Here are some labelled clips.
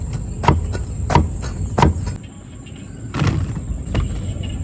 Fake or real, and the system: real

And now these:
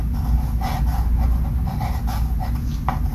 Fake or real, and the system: real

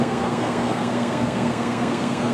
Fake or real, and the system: fake, codec, SNAC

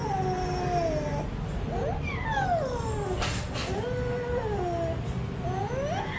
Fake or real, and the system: real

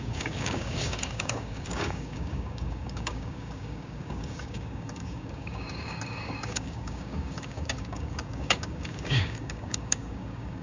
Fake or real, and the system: fake, codec, DAC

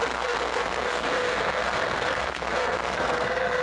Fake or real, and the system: fake, codec, SNAC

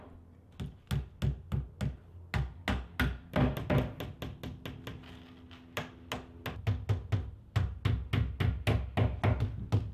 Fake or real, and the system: real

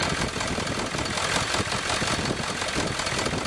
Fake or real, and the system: real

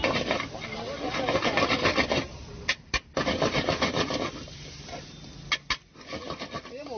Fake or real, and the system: real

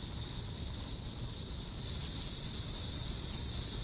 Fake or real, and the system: real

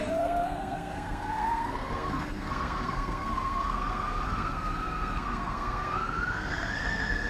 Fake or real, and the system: fake, codec, SNAC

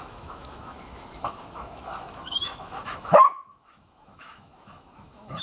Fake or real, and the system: fake, autoencoder, DAC-VAE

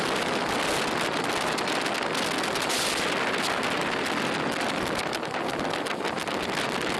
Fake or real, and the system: real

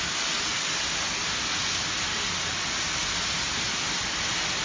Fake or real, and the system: real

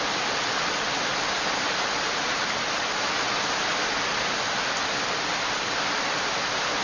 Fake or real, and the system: real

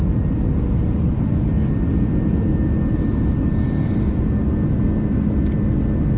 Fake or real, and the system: real